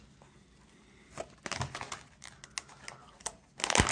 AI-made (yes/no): no